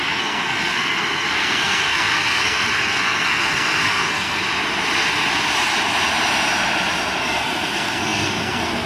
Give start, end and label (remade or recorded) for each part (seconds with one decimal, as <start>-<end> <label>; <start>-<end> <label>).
0.0-4.4 remade; 4.4-7.2 recorded; 7.2-8.9 remade